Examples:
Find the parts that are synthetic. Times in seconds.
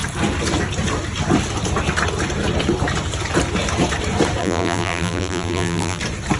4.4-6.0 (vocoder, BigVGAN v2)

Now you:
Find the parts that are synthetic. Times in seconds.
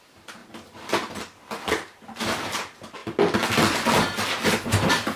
0.0-3.0 (vocoder, BigVGAN v2); 4.5-5.2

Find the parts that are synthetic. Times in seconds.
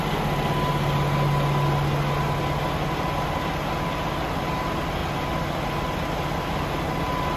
5.0-5.5 (vocoder, BigVGAN v2)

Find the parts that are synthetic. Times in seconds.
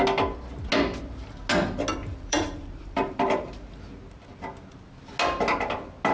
2.0-3.6 (vocoder, BigVGAN v2)